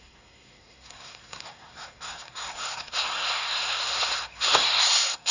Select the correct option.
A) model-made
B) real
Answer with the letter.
A